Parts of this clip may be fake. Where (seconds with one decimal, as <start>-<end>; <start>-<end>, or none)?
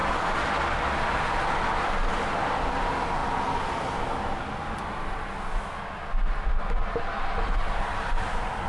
none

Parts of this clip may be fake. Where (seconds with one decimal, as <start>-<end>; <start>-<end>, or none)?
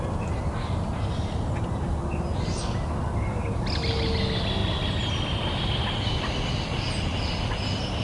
none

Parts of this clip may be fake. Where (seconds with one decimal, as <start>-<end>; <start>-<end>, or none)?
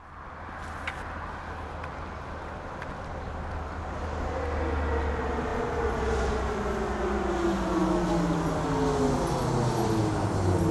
7.8-8.3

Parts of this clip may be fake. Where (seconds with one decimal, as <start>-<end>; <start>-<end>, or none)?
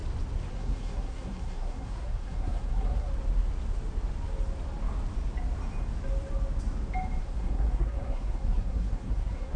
0.5-3.1; 7.2-9.6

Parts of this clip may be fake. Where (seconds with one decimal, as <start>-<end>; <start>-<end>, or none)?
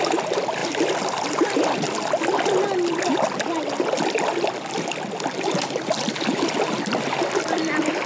none